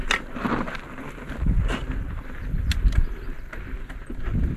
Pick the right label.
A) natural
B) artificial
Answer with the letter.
A